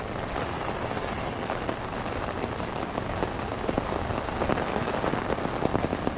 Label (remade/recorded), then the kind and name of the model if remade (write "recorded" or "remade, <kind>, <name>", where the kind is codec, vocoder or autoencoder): recorded